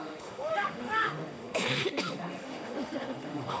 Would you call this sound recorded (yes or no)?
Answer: no